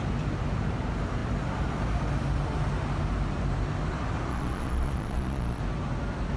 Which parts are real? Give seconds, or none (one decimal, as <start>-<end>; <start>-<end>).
0.0-4.3; 5.6-6.4